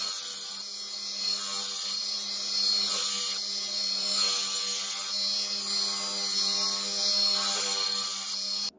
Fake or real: real